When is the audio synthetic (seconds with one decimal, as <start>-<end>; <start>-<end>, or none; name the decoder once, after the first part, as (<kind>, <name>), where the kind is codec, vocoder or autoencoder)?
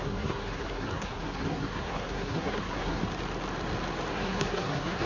0.0-3.0 (codec, SNAC); 4.1-5.1